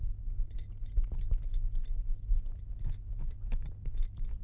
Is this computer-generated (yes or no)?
no